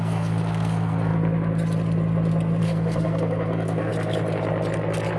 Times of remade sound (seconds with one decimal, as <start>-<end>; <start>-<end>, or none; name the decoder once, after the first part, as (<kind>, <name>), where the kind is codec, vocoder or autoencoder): 0.0-1.1 (codec, SNAC); 2.6-3.9